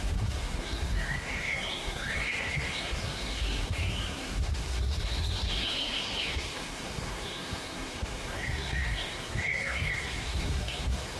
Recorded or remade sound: remade